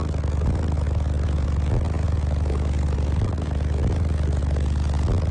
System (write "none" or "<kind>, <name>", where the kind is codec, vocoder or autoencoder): none